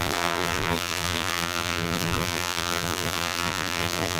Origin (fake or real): fake